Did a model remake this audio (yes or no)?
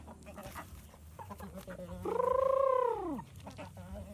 no